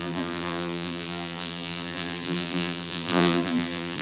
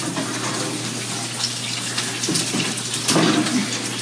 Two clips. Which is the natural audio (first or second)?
second